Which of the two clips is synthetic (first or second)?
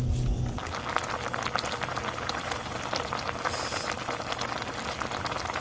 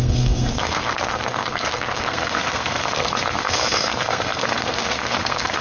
second